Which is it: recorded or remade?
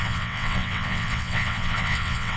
remade